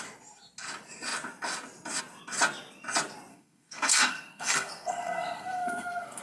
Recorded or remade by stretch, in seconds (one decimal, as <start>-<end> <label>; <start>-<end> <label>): 0.0-3.3 recorded; 3.3-6.2 remade